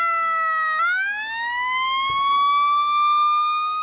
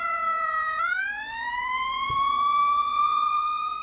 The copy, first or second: second